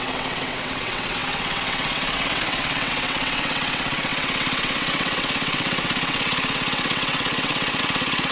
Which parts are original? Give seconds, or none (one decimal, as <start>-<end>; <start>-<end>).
none